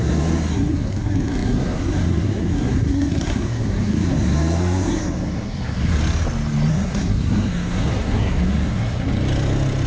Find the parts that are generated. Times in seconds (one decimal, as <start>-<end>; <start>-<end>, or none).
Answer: 0.0-6.0; 6.7-9.1